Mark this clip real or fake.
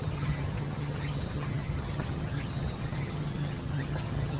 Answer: fake